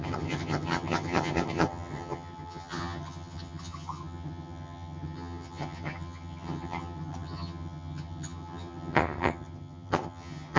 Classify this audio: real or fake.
fake